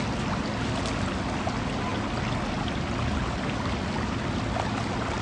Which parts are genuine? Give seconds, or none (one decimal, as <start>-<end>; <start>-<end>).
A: 0.0-5.2